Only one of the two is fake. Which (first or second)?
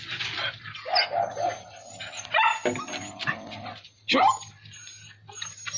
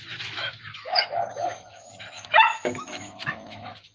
second